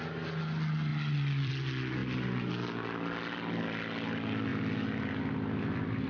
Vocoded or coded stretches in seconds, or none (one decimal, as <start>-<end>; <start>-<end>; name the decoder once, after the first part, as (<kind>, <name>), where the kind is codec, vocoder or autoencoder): 0.9-1.5 (vocoder, BigVGAN v2); 2.0-2.5